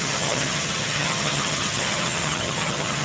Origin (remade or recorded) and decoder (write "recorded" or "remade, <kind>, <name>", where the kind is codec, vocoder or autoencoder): remade, vocoder, HiFi-GAN